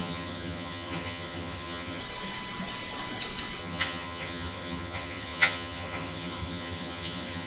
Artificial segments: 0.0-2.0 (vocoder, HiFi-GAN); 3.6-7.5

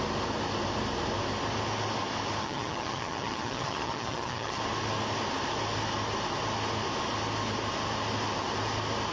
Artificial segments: 2.4-4.6 (vocoder, HiFi-GAN)

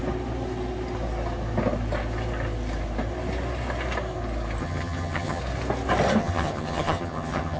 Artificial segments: 4.6-5.4 (vocoder, HiFi-GAN); 6.2-7.6

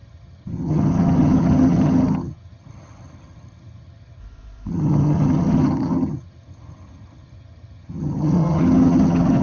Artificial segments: 0.0-4.2 (vocoder, HiFi-GAN); 4.7-9.4